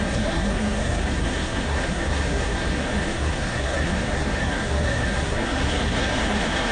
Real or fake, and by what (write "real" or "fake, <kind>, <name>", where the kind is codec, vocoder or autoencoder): fake, codec, SNAC